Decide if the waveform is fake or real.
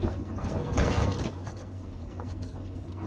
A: fake